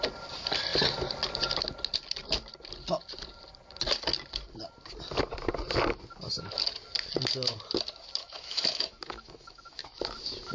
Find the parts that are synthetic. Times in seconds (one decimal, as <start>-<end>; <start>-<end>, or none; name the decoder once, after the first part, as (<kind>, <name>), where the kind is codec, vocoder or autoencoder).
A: 8.2-10.0 (autoencoder, DAC-VAE)

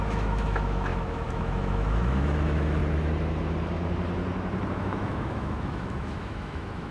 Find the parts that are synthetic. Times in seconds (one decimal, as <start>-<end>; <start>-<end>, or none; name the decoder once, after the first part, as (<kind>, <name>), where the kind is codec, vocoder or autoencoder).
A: 0.0-2.8 (autoencoder, DAC-VAE); 4.7-6.9

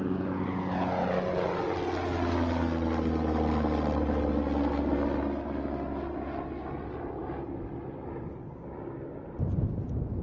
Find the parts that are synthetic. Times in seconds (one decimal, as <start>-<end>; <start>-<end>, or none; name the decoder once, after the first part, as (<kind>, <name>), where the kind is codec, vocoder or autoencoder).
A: none

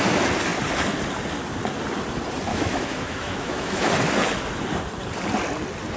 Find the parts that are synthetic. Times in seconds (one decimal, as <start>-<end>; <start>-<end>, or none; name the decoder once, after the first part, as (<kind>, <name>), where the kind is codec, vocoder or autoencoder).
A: 2.5-3.9 (autoencoder, DAC-VAE)

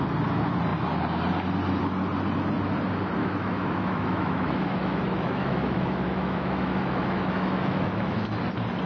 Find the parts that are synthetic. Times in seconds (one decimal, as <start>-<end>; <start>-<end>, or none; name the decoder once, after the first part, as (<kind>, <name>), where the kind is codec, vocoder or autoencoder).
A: 3.2-8.4 (autoencoder, DAC-VAE)